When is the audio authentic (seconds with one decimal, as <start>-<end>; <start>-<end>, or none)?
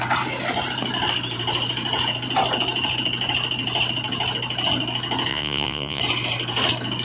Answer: 0.0-5.3; 6.0-7.0